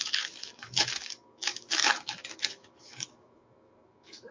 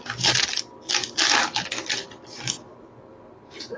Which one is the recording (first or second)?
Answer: second